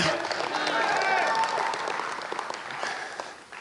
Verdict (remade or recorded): recorded